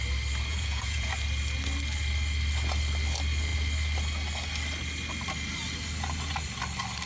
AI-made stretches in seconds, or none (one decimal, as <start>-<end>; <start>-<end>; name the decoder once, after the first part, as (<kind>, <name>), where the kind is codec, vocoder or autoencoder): 0.5-1.1 (vocoder, Vocos)

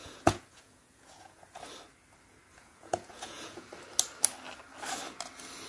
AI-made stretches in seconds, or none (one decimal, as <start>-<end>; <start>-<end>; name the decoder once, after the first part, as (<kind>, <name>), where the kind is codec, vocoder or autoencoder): 0.0-1.6 (vocoder, Vocos); 2.5-3.7

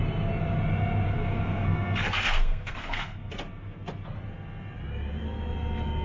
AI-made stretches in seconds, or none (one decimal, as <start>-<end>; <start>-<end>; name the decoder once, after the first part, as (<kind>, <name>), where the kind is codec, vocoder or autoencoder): 1.2-3.3 (codec, SNAC)

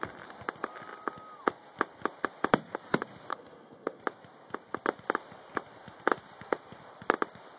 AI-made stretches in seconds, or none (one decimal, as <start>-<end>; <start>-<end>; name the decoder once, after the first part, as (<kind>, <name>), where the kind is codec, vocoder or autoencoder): 3.3-4.0 (codec, SNAC)

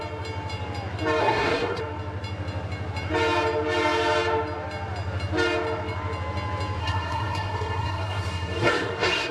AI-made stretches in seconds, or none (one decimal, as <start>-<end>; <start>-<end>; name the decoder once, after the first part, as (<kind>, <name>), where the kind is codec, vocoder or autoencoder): 1.2-1.8 (codec, SNAC); 6.8-9.3

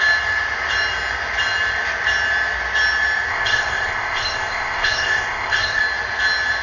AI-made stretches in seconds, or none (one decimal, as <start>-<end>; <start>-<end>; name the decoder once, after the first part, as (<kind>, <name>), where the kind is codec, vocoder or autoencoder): 3.3-5.8 (codec, ZipCodec)

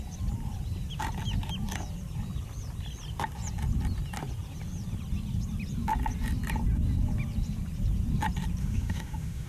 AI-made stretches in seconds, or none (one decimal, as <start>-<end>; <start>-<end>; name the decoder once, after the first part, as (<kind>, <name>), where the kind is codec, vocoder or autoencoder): 8.6-9.5 (autoencoder, DAC-VAE)

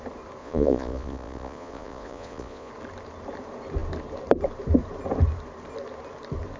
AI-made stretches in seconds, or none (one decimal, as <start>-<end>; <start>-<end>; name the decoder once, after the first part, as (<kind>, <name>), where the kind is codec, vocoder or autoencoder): 0.4-2.7 (vocoder, Vocos)